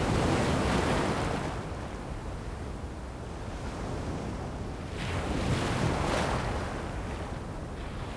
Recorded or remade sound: recorded